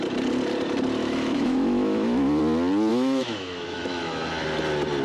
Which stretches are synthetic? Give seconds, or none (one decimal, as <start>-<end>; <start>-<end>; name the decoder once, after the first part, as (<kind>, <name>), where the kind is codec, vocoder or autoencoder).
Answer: 1.0-2.4 (autoencoder, DAC-VAE); 2.9-4.3